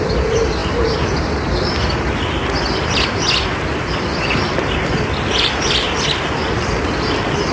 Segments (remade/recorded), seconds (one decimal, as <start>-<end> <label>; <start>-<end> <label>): 0.0-7.5 recorded